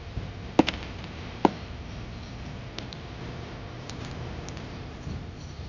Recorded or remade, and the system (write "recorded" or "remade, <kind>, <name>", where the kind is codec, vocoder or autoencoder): remade, vocoder, BigVGAN v2